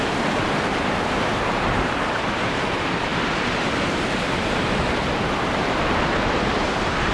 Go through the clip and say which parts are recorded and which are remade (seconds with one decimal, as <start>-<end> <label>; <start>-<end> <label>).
0.0-7.1 remade